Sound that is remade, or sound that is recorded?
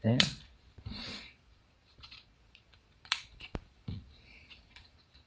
remade